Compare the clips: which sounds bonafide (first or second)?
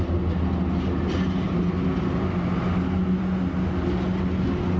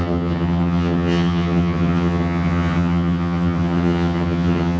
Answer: first